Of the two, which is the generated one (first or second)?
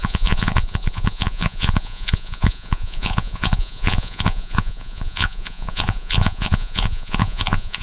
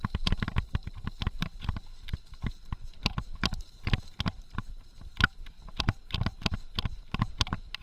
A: first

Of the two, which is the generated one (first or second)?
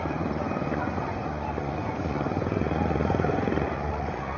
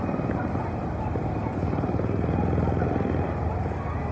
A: first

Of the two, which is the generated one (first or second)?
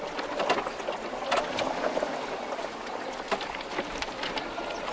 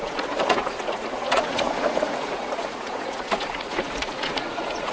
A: second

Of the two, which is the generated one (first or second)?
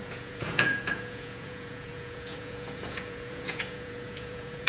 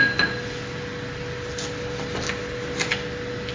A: first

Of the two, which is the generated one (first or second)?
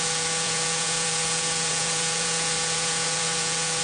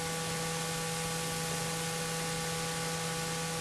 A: first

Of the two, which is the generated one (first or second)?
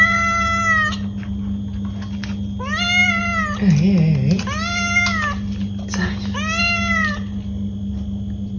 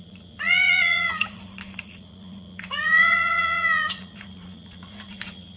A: second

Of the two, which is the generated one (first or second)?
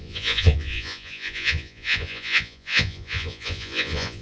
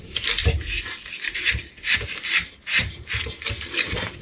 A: first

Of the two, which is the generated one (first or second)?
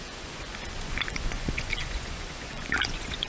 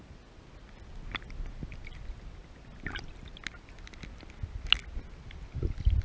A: first